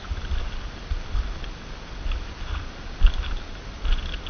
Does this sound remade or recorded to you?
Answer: recorded